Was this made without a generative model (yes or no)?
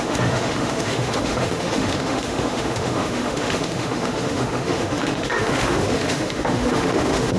no